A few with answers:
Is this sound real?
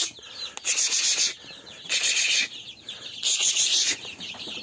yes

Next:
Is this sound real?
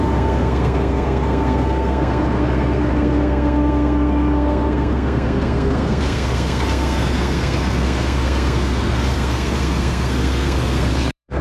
no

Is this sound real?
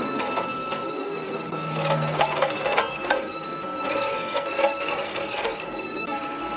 no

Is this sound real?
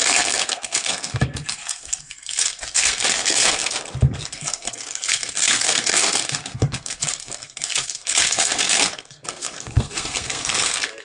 no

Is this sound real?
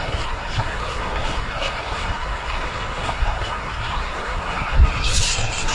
no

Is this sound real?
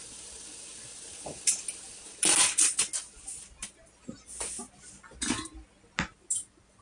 yes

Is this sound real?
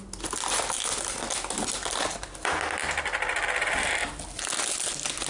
yes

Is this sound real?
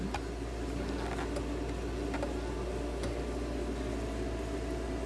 yes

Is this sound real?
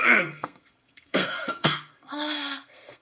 no